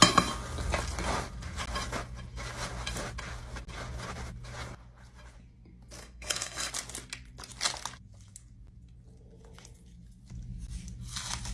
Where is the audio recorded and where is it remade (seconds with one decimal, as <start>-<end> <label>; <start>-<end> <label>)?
0.0-6.0 recorded; 6.0-6.7 remade; 6.7-11.5 recorded

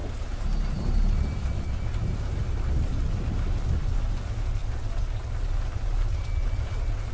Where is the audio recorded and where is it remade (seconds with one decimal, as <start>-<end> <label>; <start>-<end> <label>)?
0.0-7.1 recorded

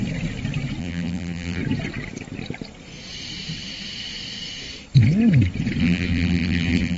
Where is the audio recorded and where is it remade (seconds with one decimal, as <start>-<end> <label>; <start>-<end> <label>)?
0.0-0.8 recorded; 0.8-1.6 remade; 1.6-5.8 recorded; 5.8-7.0 remade

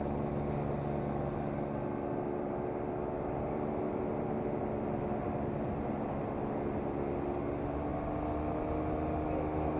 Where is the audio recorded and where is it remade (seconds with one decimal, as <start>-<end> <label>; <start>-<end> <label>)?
0.0-9.8 recorded

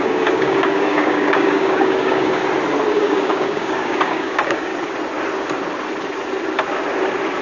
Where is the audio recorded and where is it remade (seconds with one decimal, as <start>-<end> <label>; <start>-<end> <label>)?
0.0-2.4 remade; 2.4-2.9 recorded; 2.9-4.7 remade; 4.7-7.4 recorded

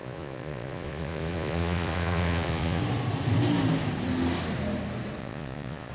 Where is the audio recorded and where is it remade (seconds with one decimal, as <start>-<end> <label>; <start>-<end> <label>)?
0.0-2.8 remade; 2.8-5.2 recorded; 5.2-5.9 remade

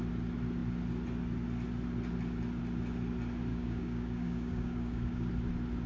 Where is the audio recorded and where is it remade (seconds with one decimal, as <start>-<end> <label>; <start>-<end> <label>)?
0.0-3.5 recorded; 3.5-5.3 remade; 5.3-5.9 recorded

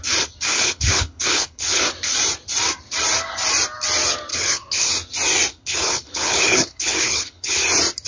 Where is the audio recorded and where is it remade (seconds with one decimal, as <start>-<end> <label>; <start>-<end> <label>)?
0.0-0.5 recorded; 0.5-1.8 remade; 1.8-4.3 recorded; 4.3-4.9 remade; 4.9-5.5 recorded; 5.5-7.6 remade; 7.6-8.1 recorded